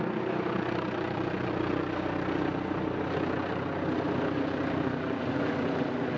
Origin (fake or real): real